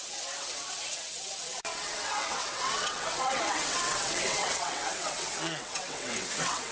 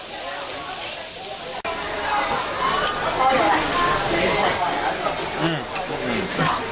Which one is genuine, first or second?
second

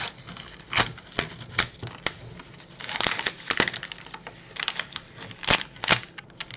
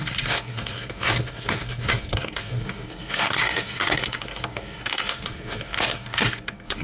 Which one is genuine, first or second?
first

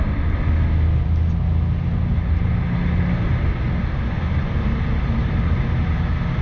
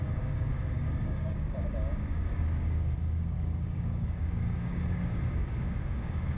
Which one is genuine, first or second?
first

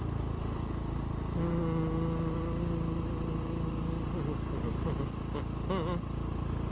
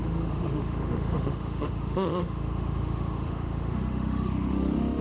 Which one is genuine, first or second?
first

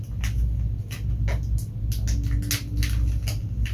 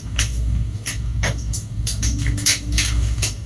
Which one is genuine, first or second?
first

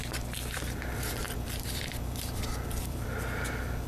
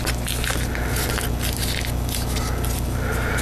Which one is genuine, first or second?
second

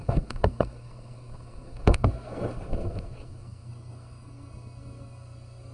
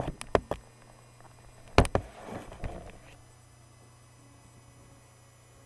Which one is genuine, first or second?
second